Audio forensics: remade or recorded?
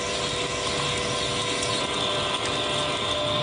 recorded